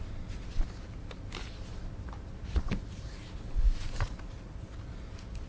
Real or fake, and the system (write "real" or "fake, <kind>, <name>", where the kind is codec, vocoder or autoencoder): real